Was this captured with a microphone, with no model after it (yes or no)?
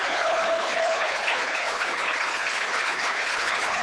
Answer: no